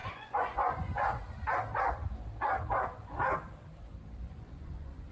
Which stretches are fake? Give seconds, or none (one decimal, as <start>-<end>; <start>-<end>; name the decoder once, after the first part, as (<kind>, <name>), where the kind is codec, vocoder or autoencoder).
0.0-1.2 (vocoder, Vocos); 4.2-5.1